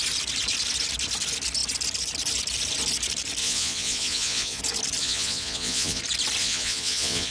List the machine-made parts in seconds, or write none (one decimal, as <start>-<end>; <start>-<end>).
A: 3.4-4.6; 5.0-6.0; 6.4-7.3